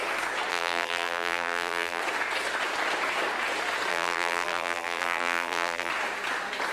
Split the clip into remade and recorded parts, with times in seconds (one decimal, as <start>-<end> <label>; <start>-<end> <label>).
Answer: 0.0-0.5 recorded; 0.5-2.0 remade; 2.0-3.9 recorded; 3.9-5.9 remade; 5.9-6.7 recorded